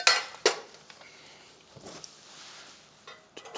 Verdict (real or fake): real